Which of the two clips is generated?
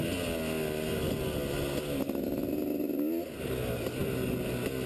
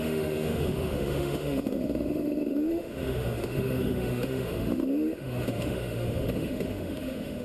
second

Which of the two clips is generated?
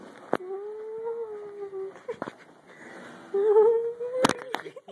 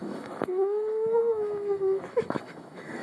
second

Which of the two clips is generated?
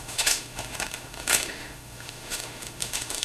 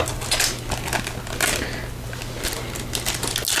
first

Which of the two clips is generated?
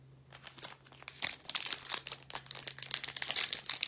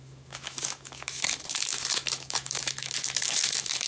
second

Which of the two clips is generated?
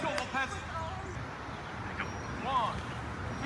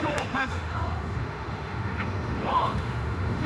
second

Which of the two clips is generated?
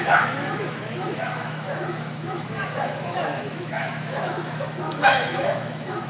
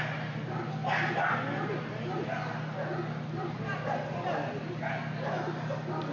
first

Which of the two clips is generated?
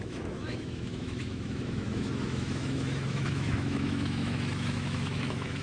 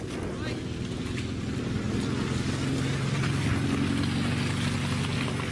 first